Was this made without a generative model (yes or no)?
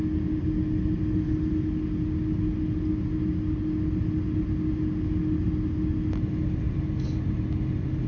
yes